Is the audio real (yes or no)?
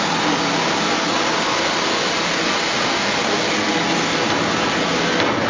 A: yes